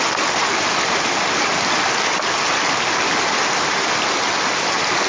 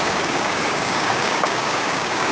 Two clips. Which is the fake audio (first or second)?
second